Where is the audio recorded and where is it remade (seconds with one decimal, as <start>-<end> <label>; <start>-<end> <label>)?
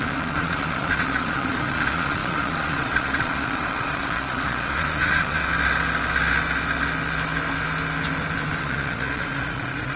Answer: 0.0-5.4 remade; 5.4-8.6 recorded; 8.6-10.0 remade